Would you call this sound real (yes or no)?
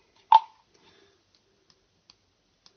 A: yes